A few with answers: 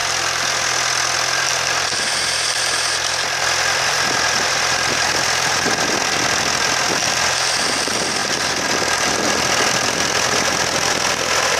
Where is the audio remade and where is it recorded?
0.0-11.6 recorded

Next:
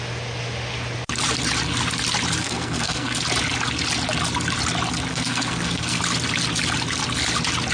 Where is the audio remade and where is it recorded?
0.0-2.4 recorded; 2.4-3.2 remade; 3.2-5.1 recorded; 5.1-6.0 remade; 6.0-7.7 recorded

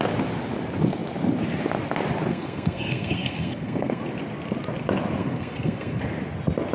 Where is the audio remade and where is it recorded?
0.0-2.3 recorded; 2.3-4.0 remade; 4.0-5.2 recorded; 5.2-6.0 remade; 6.0-6.7 recorded